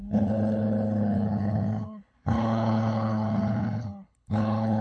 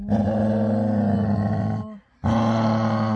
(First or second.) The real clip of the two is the second